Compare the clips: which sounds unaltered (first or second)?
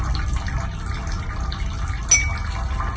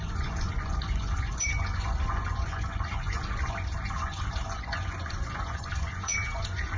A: first